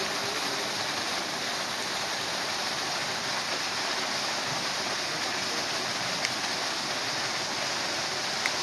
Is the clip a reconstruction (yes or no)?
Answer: no